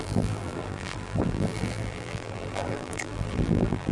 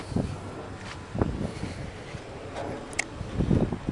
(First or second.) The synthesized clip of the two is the first